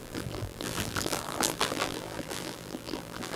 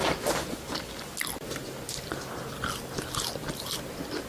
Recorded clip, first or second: second